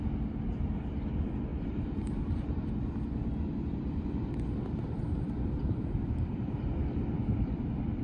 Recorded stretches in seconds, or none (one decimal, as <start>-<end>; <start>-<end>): 0.0-1.5; 2.7-5.6; 6.7-8.0